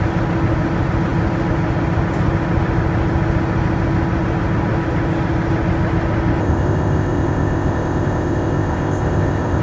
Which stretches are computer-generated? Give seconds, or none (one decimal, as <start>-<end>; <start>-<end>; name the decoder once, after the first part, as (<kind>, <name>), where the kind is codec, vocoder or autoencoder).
6.4-9.6 (codec, ZipCodec)